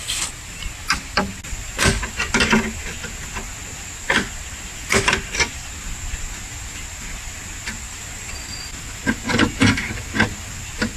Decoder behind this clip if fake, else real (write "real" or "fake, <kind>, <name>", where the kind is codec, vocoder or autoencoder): real